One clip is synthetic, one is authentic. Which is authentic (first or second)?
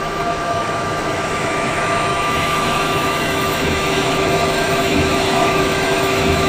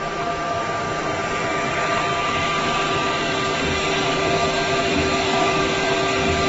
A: second